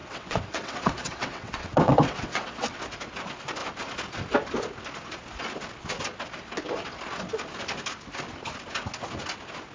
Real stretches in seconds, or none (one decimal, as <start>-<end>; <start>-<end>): 2.8-9.7